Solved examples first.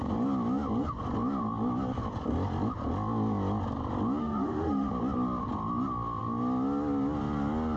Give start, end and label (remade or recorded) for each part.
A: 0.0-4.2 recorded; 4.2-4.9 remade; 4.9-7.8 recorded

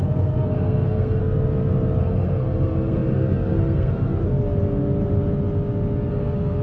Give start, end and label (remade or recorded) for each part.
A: 0.0-1.2 remade; 1.2-2.0 recorded; 2.0-4.1 remade; 4.1-6.1 recorded; 6.1-6.6 remade